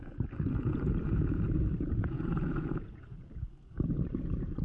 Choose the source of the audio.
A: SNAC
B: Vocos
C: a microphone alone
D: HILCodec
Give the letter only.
B